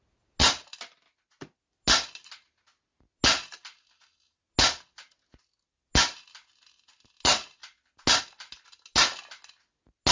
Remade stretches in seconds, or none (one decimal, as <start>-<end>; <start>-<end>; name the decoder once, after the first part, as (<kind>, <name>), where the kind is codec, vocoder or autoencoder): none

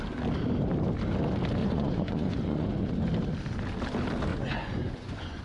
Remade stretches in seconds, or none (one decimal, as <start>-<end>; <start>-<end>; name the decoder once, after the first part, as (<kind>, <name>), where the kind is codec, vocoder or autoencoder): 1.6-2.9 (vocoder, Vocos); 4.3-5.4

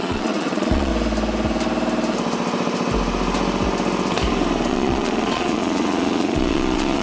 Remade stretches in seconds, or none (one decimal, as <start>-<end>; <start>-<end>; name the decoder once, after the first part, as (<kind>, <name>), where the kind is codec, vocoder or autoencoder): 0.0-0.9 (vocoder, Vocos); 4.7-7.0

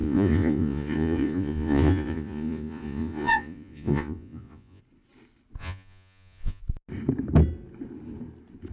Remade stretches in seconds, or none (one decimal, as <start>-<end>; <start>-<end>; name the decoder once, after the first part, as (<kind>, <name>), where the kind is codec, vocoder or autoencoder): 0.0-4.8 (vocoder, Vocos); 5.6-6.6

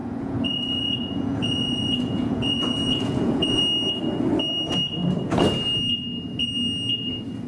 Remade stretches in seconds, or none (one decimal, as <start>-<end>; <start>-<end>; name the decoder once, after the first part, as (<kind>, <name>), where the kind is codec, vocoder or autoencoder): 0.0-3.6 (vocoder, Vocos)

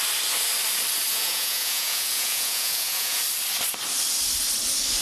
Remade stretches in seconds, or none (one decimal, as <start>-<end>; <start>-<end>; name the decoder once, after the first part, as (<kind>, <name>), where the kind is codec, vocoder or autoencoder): 1.1-3.2 (vocoder, Vocos)